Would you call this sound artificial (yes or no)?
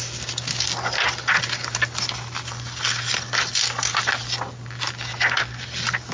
no